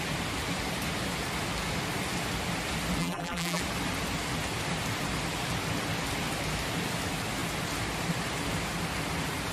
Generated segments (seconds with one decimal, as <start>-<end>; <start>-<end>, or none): 3.0-3.6